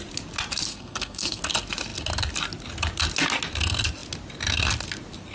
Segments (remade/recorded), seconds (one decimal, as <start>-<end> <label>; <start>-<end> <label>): 0.0-0.7 recorded; 0.7-1.4 remade; 1.4-5.3 recorded